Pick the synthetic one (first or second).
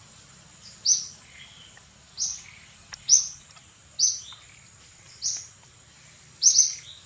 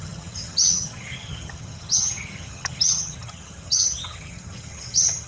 second